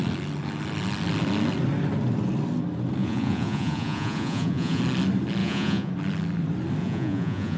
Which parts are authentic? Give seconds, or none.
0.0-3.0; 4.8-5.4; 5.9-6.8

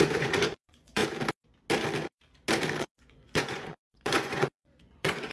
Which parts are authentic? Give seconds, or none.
1.0-2.8

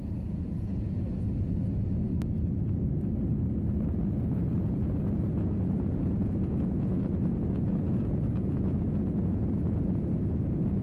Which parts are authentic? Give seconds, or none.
2.1-4.3

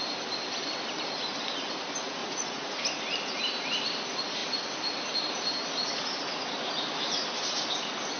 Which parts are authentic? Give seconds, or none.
0.0-2.2; 2.8-8.2

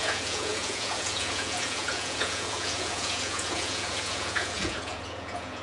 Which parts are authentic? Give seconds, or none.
none

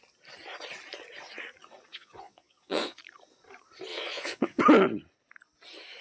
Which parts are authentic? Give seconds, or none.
0.0-1.9; 3.0-3.9; 4.6-6.0

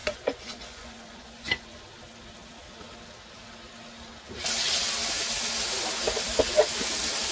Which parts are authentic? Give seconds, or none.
1.9-7.3

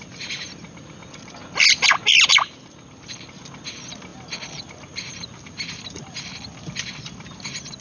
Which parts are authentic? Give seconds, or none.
0.0-7.8